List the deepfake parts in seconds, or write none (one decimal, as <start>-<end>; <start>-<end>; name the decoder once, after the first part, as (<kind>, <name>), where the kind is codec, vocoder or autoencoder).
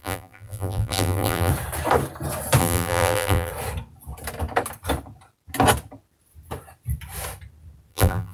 0.0-1.5 (vocoder, BigVGAN v2); 2.6-3.5; 7.9-8.3